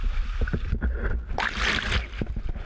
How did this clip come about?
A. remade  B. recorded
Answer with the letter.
A